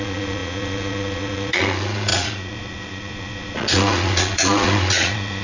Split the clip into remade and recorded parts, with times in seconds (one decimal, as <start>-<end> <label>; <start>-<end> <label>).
0.0-5.4 remade

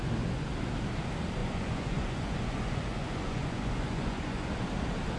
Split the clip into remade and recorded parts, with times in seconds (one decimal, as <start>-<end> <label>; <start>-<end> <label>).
0.0-1.4 recorded; 1.4-4.5 remade; 4.5-5.2 recorded